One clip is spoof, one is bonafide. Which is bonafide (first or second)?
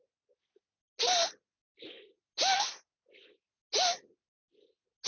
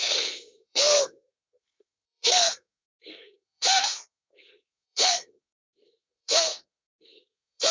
first